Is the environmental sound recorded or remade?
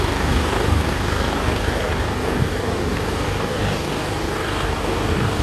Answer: remade